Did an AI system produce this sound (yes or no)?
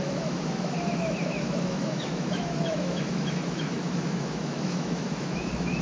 yes